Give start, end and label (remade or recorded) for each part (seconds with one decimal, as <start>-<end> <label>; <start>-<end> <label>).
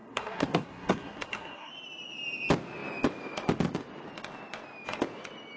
0.0-1.7 remade; 1.7-5.6 recorded